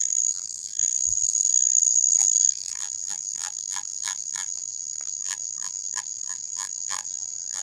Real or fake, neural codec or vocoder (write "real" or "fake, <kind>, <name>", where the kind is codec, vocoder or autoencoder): fake, vocoder, BigVGAN v2